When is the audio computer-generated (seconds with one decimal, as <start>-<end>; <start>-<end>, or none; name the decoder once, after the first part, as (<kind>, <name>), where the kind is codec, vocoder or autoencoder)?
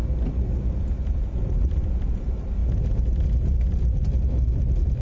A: 1.1-2.6 (vocoder, BigVGAN v2); 4.5-5.0